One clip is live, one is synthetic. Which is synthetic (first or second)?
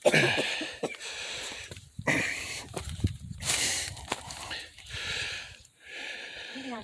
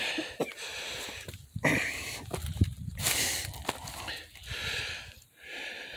first